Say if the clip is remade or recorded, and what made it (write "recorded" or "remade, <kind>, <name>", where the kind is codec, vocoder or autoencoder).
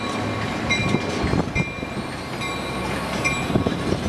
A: recorded